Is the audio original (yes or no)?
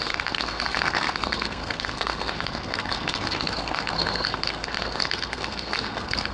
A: no